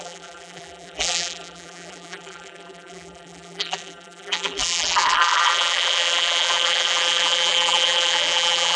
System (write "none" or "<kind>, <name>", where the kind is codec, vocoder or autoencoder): vocoder, BigVGAN v2